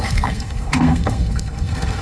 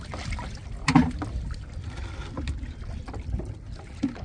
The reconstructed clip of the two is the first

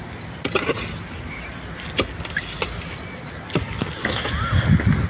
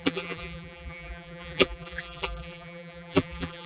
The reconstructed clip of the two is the second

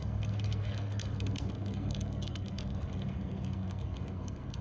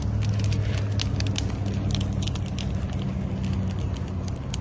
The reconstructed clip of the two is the first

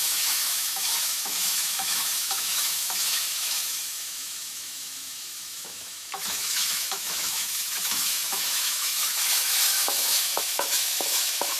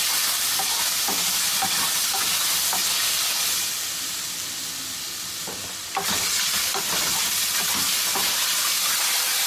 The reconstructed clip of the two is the first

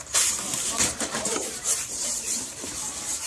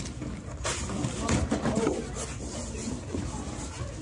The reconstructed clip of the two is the first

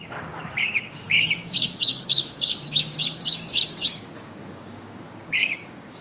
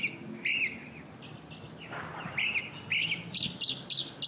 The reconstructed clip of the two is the first